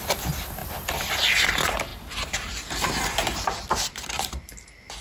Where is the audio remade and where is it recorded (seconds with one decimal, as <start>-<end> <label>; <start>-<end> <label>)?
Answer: 0.0-0.6 recorded; 0.6-1.5 remade; 1.5-1.9 recorded; 1.9-5.0 remade